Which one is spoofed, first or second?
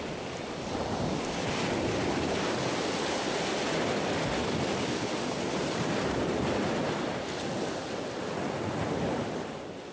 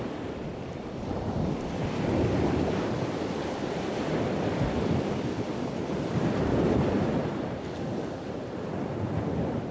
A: second